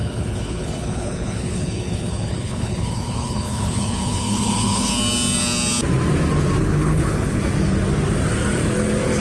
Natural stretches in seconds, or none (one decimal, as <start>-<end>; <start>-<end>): 4.9-6.6; 7.4-9.2